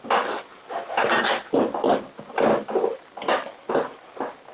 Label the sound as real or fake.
real